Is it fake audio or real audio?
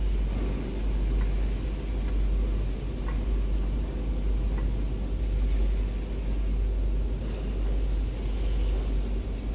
real